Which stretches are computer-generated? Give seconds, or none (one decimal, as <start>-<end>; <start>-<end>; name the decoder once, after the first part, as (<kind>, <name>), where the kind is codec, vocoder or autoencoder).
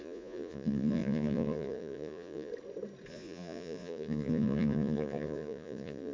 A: 0.0-2.5 (vocoder, Vocos); 3.1-6.1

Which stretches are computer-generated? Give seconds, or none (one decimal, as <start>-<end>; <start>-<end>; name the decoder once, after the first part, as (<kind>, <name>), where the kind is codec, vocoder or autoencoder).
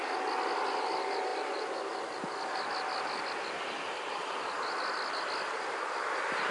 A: none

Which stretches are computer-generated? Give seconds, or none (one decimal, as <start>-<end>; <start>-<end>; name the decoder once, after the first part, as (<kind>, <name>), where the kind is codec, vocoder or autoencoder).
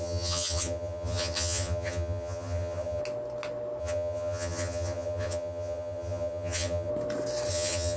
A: 0.0-3.0 (vocoder, HiFi-GAN); 3.8-6.9; 7.5-8.0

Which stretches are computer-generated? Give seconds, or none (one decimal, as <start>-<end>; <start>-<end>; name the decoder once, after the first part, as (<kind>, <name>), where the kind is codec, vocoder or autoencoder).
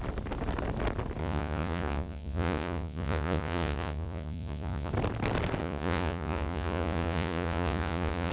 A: 1.2-4.9 (vocoder, Vocos); 5.6-8.3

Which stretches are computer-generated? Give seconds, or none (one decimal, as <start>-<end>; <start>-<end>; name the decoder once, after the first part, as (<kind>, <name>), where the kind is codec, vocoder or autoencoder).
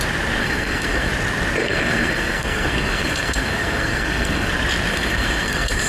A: 0.4-1.1 (codec, SNAC); 1.6-4.5; 4.9-5.9